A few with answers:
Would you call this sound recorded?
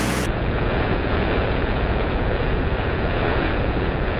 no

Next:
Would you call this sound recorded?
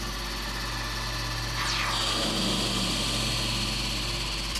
yes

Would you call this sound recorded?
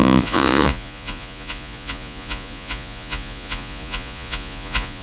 no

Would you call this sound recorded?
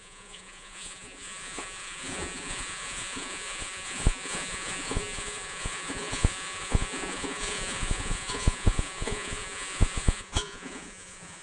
no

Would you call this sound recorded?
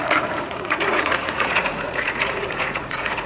no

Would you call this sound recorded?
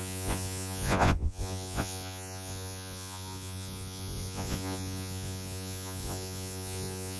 no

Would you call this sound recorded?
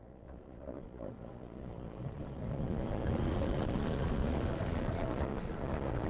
no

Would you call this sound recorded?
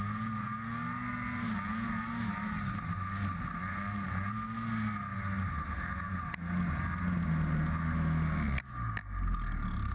yes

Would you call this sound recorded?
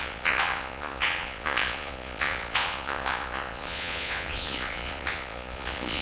no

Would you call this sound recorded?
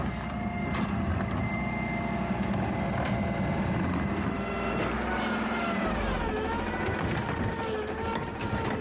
yes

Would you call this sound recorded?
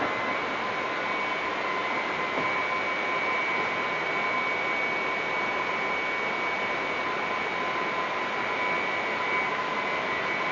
yes